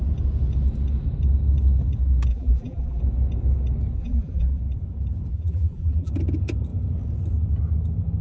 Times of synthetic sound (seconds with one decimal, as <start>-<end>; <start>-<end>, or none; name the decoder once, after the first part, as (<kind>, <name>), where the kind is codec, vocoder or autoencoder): 2.3-3.0 (vocoder, BigVGAN v2); 4.0-4.6; 5.3-6.1